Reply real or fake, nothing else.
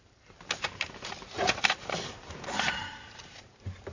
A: fake